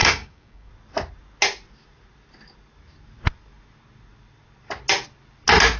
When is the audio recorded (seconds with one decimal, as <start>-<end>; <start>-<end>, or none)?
0.7-5.8